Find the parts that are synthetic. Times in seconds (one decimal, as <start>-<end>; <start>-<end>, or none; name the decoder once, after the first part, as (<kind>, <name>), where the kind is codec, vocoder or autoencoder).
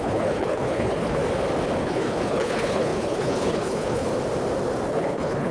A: 0.0-1.2 (codec, HILCodec); 1.8-4.1; 4.9-5.5